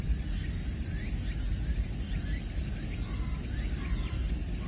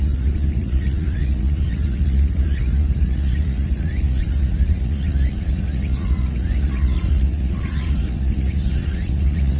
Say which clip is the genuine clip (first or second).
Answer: first